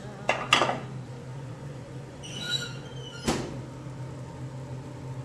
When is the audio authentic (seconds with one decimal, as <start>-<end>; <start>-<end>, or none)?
0.0-1.3; 2.9-5.2